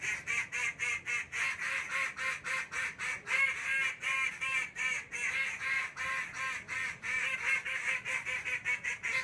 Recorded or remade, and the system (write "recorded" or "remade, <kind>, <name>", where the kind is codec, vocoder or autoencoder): recorded